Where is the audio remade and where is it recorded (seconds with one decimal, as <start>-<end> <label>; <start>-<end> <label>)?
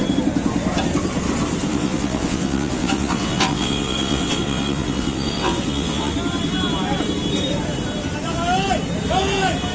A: 0.0-1.7 recorded; 1.7-6.1 remade; 6.1-9.7 recorded